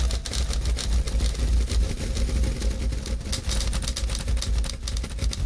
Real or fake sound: real